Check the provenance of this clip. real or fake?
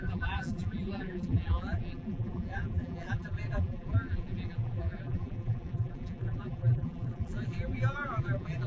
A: fake